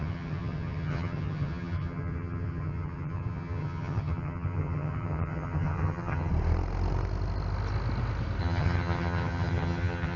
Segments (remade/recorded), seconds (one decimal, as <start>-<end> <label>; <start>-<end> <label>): 0.0-6.3 remade; 6.3-8.4 recorded; 8.4-10.2 remade